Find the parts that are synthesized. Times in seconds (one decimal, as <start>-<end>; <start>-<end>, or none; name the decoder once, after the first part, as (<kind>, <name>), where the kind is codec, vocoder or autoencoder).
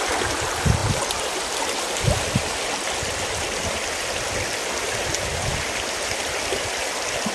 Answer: none